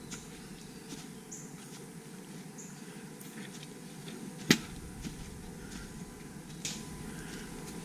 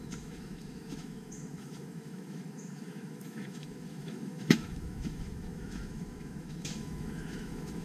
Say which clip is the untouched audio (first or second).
first